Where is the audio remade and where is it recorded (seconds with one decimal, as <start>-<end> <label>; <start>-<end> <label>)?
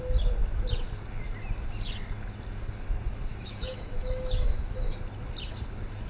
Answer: 0.0-3.3 recorded; 3.3-5.0 remade; 5.0-6.1 recorded